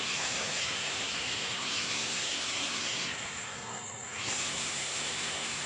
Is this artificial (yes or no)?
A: yes